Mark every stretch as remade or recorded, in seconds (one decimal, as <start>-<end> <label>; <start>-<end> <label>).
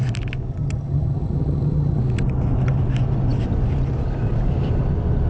0.0-0.5 recorded; 0.5-2.0 remade; 2.0-5.3 recorded